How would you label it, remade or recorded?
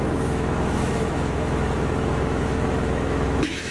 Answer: remade